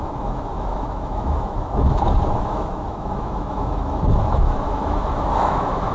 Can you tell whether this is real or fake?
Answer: fake